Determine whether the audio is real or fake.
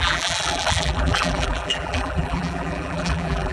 fake